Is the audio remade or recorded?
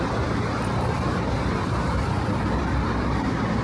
remade